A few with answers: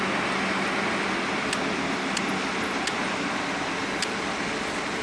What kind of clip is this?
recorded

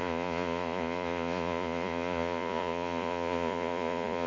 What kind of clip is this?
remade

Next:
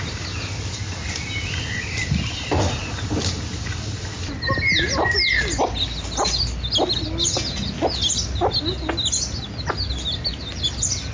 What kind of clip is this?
recorded